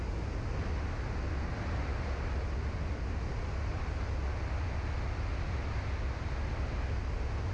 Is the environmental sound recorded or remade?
recorded